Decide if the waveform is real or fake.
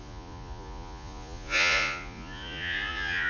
fake